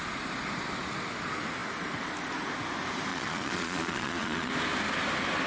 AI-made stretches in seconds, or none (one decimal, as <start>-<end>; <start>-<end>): 3.1-4.5